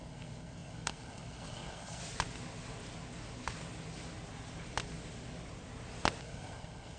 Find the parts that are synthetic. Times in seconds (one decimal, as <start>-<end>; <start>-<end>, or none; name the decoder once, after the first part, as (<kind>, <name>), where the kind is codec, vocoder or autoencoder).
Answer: 0.0-2.0 (codec, SNAC); 6.2-7.0